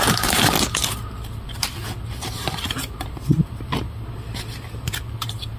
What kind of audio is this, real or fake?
real